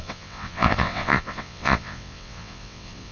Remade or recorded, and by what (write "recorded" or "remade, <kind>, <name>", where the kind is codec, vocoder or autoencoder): remade, vocoder, WaveNeXt